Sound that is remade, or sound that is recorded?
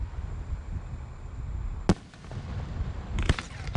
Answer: recorded